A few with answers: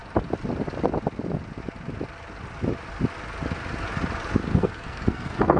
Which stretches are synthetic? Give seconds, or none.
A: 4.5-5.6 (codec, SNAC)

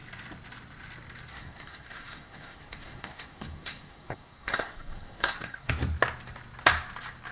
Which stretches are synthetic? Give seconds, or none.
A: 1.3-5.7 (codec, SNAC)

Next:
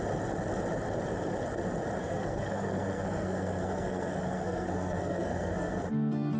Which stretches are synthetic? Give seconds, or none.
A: 2.0-5.8 (codec, SNAC)

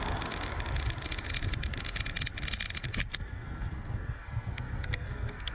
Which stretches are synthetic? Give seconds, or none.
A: 3.1-5.5 (codec, SNAC)

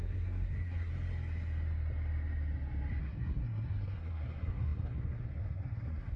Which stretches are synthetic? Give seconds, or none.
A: 0.0-0.9 (codec, SNAC); 3.0-6.2

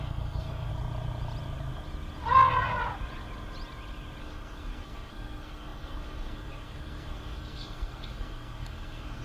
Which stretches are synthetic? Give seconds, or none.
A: 0.0-0.7 (codec, SNAC); 4.2-9.2